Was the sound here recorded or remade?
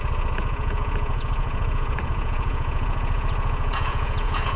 remade